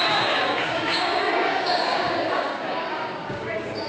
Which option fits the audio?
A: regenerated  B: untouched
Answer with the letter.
A